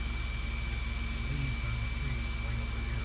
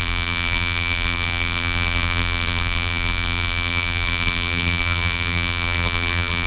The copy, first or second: second